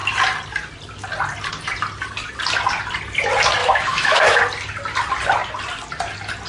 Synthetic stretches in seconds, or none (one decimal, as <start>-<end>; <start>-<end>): 3.6-4.4